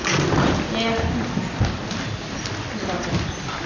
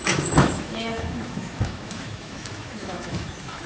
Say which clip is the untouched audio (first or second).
first